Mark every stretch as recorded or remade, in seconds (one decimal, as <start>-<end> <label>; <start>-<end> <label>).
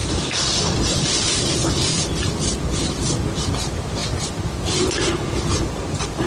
0.0-1.0 remade; 1.0-6.3 recorded